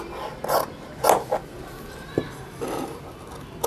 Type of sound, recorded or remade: recorded